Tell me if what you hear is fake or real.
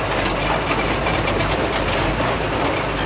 real